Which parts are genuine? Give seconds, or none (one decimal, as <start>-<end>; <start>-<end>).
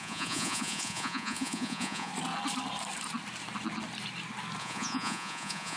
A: 2.1-4.6